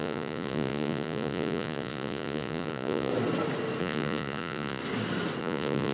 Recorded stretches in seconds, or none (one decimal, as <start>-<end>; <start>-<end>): 3.1-3.8; 4.8-5.4